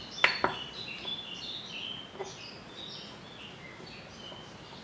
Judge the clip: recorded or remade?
recorded